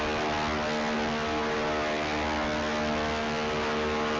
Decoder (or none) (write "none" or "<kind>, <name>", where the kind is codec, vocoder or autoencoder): none